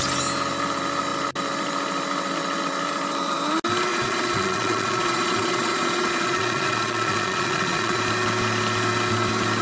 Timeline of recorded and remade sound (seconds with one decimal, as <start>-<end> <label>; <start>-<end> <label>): 0.0-3.9 recorded; 3.9-8.0 remade; 8.0-9.6 recorded